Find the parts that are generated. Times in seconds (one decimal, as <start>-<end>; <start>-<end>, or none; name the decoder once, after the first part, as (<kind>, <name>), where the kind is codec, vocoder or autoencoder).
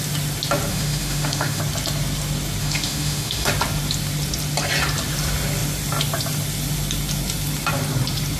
0.7-1.6 (autoencoder, DAC-VAE); 2.6-3.5